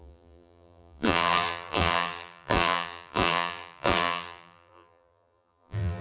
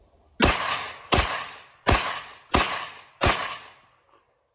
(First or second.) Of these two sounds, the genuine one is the second